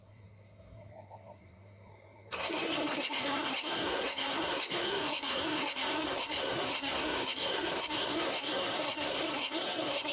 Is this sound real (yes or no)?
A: no